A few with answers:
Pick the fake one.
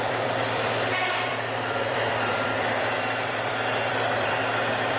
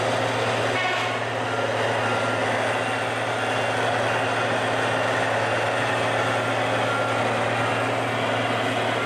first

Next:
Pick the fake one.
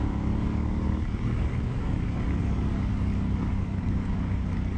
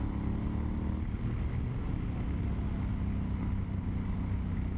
first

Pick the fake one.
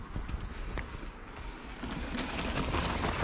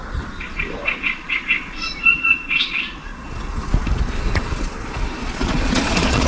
second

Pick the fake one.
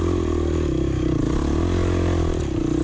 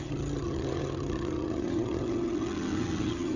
second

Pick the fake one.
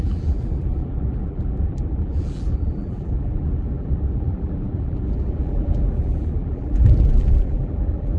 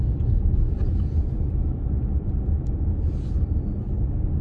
first